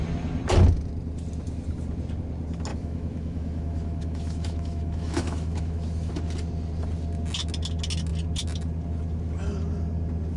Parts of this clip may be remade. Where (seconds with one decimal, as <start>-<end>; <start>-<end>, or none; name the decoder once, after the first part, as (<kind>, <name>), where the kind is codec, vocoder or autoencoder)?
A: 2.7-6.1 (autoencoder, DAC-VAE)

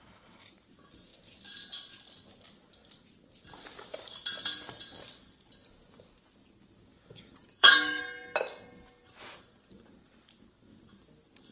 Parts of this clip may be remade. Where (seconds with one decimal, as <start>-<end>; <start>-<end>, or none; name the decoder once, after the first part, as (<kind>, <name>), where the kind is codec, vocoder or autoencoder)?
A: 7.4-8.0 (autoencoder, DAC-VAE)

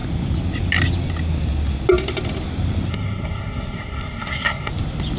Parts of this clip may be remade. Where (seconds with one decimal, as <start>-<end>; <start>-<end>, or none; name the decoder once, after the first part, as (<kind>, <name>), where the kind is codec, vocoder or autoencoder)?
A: 2.9-4.7 (codec, SNAC)